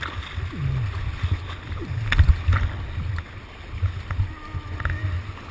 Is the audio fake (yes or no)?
no